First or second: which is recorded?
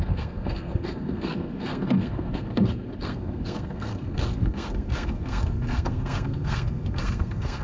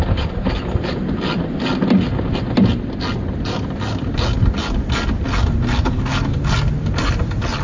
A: second